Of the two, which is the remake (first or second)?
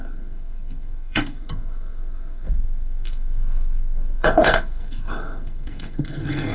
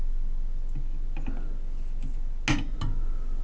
first